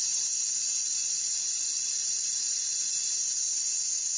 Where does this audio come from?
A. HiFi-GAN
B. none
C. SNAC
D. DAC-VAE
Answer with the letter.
B